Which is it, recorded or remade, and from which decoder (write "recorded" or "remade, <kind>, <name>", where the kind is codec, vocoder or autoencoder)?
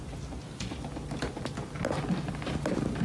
recorded